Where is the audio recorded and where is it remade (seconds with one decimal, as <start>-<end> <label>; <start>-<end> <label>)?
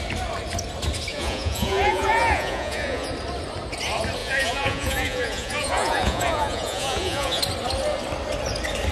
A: 0.0-1.1 recorded; 1.1-3.1 remade; 3.1-4.2 recorded; 4.2-7.4 remade; 7.4-8.9 recorded